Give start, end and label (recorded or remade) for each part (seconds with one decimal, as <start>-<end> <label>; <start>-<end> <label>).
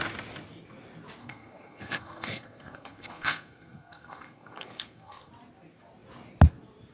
0.0-1.2 recorded; 1.2-5.3 remade; 5.3-6.9 recorded